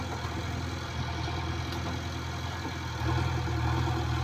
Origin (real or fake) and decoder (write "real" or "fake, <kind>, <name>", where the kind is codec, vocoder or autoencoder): real